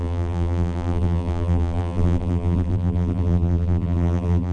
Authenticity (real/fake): fake